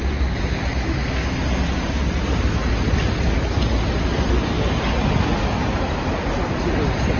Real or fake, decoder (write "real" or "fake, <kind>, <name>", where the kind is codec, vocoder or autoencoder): real